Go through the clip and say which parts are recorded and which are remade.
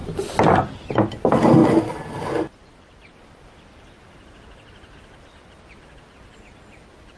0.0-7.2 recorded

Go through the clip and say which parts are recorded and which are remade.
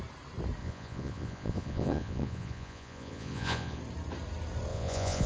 0.0-0.6 recorded; 0.6-3.8 remade; 3.8-4.7 recorded; 4.7-5.3 remade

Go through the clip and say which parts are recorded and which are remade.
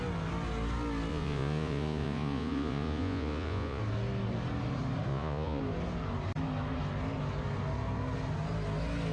0.0-1.1 recorded; 1.1-3.8 remade; 3.8-5.1 recorded; 5.1-5.6 remade; 5.6-9.1 recorded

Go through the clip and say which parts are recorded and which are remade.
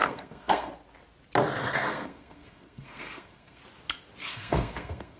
0.0-0.7 remade; 0.7-1.6 recorded; 1.6-3.6 remade; 3.6-4.2 recorded; 4.2-5.2 remade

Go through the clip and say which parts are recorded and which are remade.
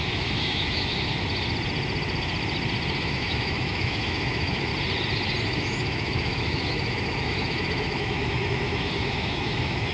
0.0-1.1 remade; 1.1-3.0 recorded; 3.0-4.7 remade; 4.7-5.4 recorded; 5.4-9.9 remade